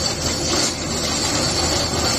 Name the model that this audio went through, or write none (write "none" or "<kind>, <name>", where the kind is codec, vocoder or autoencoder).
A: none